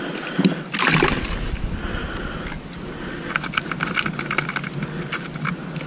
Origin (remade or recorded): recorded